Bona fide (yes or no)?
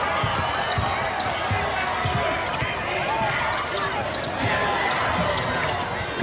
yes